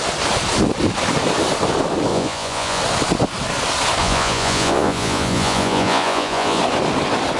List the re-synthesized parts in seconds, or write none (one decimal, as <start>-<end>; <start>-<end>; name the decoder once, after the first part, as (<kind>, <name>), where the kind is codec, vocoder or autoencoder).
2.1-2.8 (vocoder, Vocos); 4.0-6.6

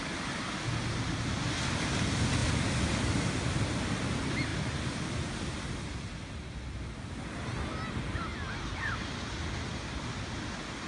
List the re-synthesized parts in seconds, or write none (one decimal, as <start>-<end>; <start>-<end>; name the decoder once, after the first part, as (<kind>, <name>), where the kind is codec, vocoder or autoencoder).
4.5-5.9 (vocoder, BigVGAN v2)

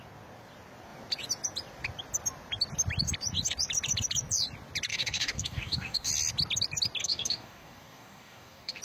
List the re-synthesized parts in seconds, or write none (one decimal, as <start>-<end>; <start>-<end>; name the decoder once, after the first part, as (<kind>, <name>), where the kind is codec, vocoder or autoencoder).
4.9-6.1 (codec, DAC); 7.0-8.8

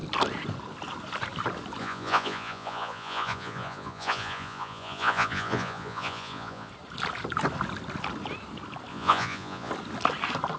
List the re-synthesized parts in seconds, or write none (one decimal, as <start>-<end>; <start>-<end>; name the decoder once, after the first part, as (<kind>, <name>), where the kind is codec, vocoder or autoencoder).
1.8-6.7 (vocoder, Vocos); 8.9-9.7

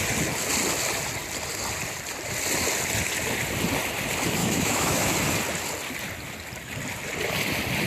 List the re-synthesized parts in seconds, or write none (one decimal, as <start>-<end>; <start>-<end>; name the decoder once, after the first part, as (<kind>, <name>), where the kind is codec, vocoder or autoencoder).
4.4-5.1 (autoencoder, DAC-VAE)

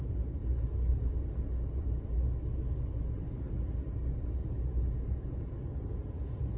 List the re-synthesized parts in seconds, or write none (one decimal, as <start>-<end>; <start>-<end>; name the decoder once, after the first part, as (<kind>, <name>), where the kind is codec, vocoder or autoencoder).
4.4-6.6 (vocoder, Vocos)

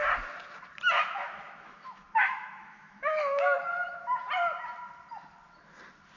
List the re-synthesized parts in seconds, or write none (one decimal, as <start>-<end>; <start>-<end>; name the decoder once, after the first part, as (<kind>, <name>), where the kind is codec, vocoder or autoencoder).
1.0-3.6 (autoencoder, DAC-VAE)